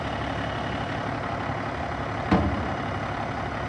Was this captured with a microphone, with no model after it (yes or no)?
yes